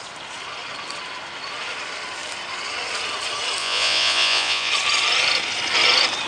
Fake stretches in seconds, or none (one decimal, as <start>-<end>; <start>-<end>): 3.6-4.7

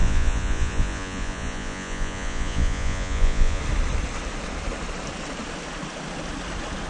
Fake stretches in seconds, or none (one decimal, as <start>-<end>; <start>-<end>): 0.0-3.6

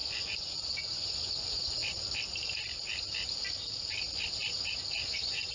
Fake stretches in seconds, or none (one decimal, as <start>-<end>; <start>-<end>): 0.0-1.8; 5.1-5.5

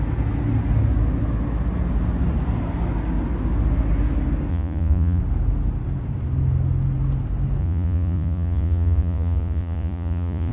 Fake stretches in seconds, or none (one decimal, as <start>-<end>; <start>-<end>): 4.5-5.2; 7.6-10.5

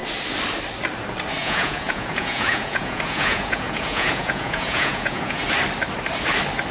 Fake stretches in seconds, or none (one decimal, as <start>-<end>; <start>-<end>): 1.4-5.4

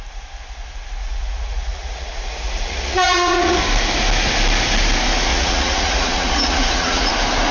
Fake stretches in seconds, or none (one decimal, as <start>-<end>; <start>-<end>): 1.0-3.6; 5.3-7.1

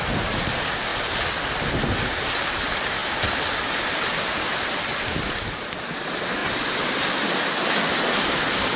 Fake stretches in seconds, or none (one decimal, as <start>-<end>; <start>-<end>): none